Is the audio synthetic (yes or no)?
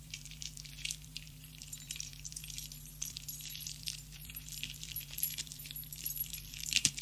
yes